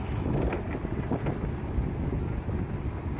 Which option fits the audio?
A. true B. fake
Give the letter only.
A